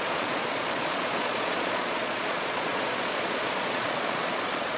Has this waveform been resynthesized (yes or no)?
yes